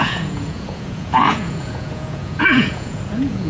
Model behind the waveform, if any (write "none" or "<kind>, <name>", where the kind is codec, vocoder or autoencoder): vocoder, Vocos